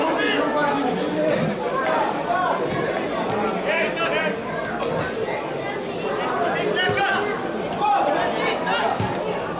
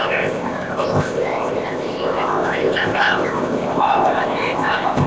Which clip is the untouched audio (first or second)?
first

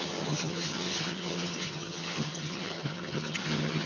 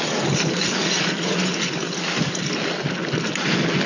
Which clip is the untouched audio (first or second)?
second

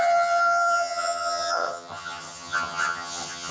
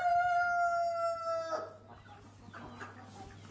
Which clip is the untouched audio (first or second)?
second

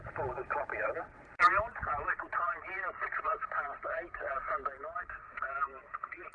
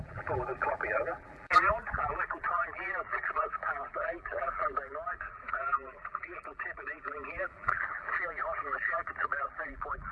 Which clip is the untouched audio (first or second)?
first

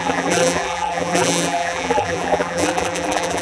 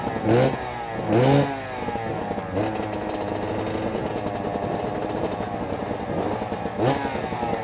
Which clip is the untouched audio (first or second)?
second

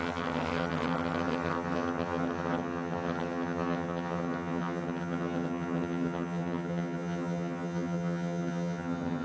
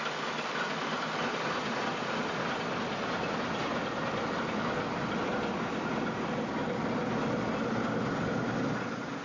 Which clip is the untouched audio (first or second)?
second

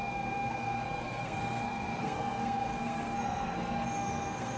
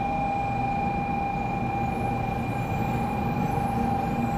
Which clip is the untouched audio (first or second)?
second